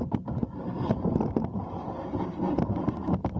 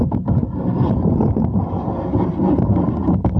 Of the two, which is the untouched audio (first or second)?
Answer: second